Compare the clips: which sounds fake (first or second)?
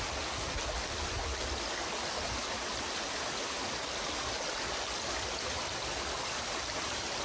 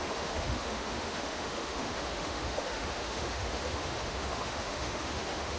second